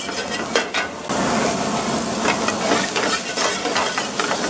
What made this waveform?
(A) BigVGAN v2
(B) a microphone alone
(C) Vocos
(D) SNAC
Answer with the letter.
B